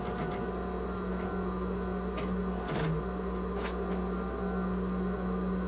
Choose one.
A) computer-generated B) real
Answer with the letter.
B